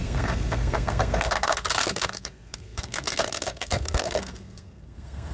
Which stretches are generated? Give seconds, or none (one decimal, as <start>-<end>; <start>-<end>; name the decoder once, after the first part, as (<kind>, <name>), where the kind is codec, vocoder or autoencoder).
0.0-5.3 (codec, SNAC)